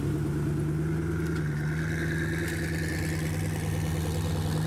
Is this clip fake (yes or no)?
no